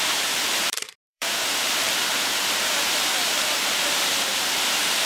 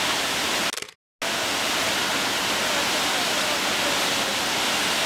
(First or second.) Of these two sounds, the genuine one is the second